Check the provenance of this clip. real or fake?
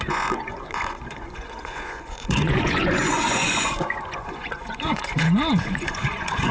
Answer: fake